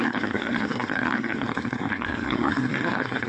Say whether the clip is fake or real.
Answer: fake